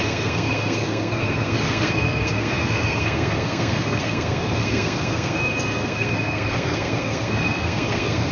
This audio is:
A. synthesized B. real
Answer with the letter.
A